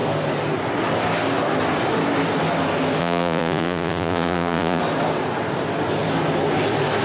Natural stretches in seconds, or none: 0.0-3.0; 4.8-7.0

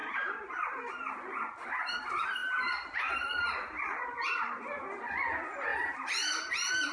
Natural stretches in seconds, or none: 0.0-2.4; 4.6-6.9

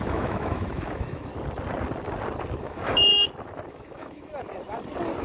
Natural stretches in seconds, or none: 1.3-2.6; 3.1-3.7; 4.3-5.2

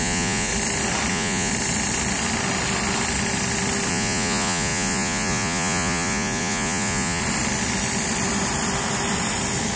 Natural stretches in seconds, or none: 0.5-1.1; 1.5-3.9; 7.2-9.8

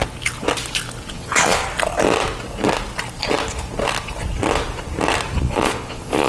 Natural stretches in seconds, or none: 0.0-1.1; 1.6-5.4

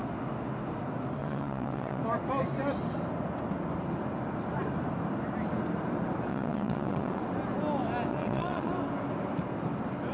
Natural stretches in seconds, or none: 0.0-1.2; 2.0-6.3; 7.2-8.1; 8.7-10.1